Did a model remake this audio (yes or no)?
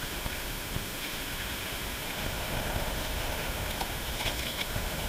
yes